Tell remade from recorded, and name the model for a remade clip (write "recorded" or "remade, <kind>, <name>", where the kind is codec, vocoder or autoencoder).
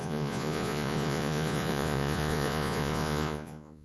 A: remade, vocoder, Vocos